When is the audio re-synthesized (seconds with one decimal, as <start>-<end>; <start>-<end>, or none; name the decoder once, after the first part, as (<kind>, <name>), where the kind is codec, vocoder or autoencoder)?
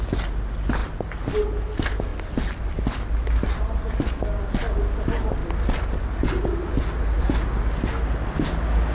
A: none